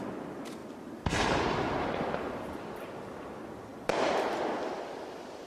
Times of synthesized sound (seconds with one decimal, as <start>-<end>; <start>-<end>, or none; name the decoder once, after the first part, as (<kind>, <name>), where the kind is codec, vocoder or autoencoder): none